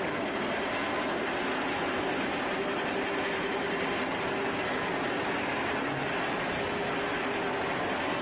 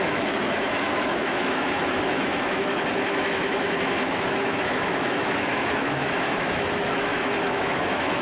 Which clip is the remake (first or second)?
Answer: second